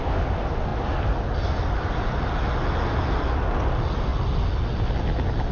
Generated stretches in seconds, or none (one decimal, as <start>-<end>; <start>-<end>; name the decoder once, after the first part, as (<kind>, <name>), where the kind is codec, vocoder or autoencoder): none